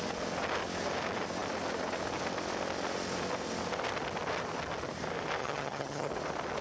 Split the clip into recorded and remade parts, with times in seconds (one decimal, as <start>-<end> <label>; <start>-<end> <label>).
0.0-5.4 recorded; 5.4-6.1 remade; 6.1-6.6 recorded